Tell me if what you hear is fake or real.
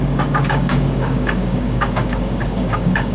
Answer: fake